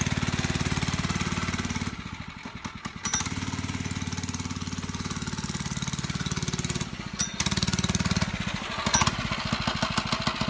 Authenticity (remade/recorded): recorded